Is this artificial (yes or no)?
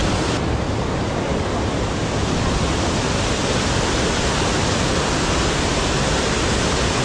no